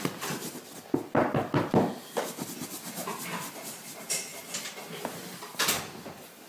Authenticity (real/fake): real